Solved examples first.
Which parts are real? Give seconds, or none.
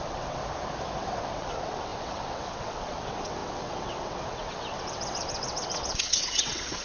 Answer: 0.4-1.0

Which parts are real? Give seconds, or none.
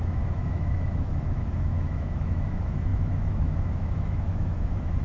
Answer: none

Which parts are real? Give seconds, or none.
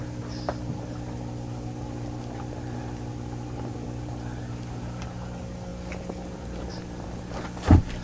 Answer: 0.0-8.0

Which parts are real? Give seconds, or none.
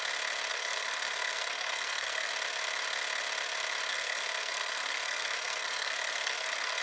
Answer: 0.0-0.5; 2.3-3.9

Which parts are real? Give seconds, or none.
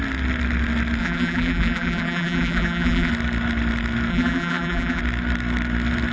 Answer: 0.0-1.0; 3.1-4.1; 5.0-6.1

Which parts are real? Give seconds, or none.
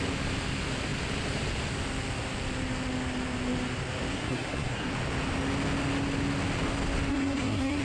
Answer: 0.0-4.1; 4.9-7.1